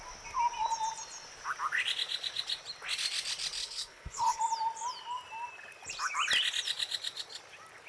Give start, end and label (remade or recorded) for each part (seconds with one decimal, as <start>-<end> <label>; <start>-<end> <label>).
0.0-3.6 recorded; 3.6-4.4 remade; 4.4-7.9 recorded